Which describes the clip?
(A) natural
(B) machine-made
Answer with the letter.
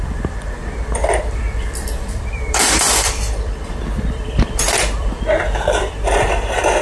B